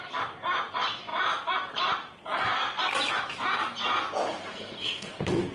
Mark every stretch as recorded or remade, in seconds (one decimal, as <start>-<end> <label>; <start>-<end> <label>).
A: 0.0-4.5 recorded; 4.5-5.1 remade; 5.1-5.5 recorded